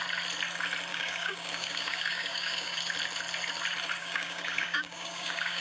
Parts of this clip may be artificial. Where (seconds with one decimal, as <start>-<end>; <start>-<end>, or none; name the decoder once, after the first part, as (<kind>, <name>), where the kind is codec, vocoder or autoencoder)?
0.9-2.8 (codec, DAC); 4.0-5.6

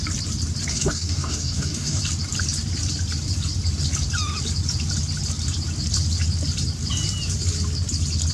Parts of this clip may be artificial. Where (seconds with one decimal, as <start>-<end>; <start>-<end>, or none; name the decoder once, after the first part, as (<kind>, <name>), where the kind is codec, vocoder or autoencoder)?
0.7-2.0 (codec, DAC)

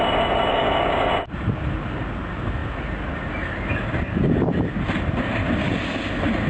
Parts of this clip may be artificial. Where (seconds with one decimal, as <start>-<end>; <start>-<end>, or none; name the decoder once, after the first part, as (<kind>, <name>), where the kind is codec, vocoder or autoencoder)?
0.5-1.1 (codec, DAC)

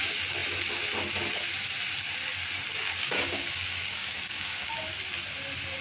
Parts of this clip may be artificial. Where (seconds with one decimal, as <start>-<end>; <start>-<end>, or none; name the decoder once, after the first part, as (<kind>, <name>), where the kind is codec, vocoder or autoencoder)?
2.9-4.8 (codec, DAC)

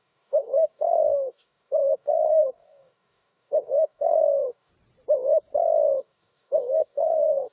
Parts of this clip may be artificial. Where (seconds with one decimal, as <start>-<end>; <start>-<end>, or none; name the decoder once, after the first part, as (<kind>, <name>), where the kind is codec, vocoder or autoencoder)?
0.0-4.7 (codec, DAC); 6.0-7.5

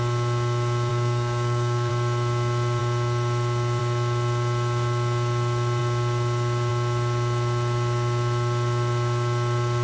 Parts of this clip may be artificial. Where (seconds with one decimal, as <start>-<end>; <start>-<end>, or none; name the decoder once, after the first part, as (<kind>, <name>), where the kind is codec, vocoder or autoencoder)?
0.9-1.9 (codec, DAC)

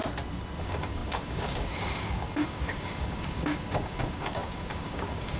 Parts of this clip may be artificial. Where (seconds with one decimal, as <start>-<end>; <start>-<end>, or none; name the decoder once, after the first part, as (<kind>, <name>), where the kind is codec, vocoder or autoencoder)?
0.6-5.4 (codec, DAC)

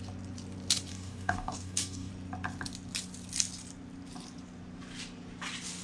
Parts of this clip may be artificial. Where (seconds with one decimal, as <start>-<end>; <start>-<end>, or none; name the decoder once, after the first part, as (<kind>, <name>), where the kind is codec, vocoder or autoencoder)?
0.9-2.1 (codec, DAC)